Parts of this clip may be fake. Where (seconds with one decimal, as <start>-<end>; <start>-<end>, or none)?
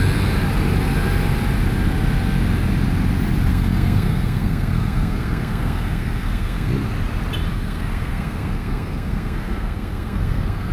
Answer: 3.5-6.7; 7.5-10.7